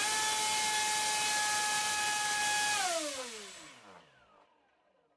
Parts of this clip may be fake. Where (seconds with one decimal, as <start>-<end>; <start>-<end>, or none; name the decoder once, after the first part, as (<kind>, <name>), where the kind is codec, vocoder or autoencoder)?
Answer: 1.8-2.4 (vocoder, BigVGAN v2)

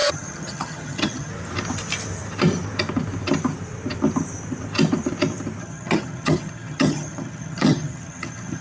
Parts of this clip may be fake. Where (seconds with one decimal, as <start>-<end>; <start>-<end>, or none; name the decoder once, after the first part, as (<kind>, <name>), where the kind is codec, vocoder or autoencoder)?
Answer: 0.0-1.3 (vocoder, HiFi-GAN); 5.6-8.6

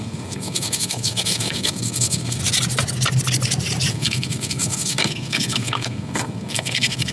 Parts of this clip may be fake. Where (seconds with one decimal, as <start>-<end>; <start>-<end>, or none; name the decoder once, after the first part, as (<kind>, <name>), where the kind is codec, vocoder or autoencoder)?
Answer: 0.0-2.4 (codec, SNAC); 3.9-7.1

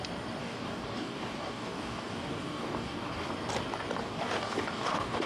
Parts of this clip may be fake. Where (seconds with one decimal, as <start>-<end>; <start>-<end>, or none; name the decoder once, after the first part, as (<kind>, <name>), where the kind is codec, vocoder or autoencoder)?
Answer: 0.4-3.3 (codec, DAC); 4.0-5.3